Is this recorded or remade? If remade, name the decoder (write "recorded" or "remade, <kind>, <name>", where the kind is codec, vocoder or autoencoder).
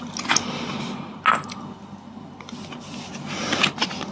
recorded